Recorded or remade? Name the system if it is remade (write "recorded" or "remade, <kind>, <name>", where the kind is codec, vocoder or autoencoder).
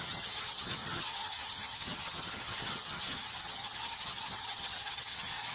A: remade, vocoder, HiFi-GAN